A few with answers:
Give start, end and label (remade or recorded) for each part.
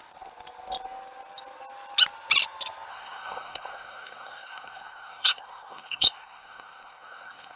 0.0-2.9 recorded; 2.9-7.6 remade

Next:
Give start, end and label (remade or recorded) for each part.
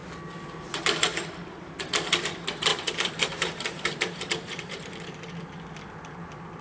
0.0-1.1 recorded; 1.1-1.9 remade; 1.9-2.7 recorded; 2.7-4.8 remade; 4.8-6.6 recorded